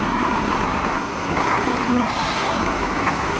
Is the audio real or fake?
fake